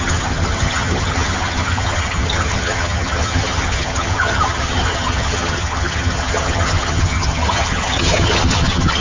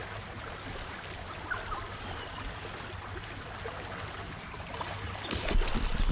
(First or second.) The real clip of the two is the second